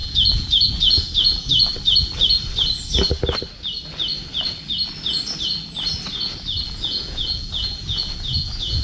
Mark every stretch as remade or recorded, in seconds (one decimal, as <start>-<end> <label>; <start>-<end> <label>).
0.0-1.7 remade; 1.7-6.6 recorded; 6.6-8.8 remade